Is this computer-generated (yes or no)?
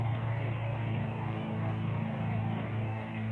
yes